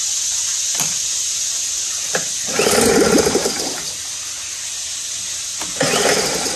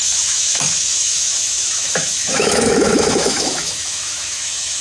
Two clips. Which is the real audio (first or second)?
first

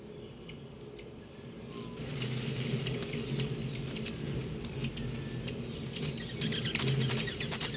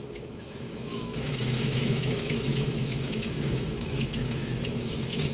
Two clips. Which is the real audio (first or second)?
first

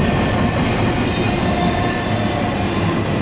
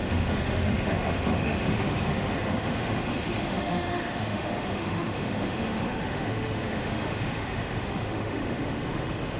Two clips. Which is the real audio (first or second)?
first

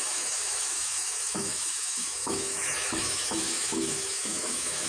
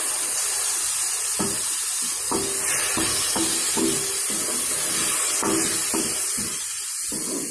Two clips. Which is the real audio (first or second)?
second